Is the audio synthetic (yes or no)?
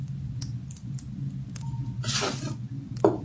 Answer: no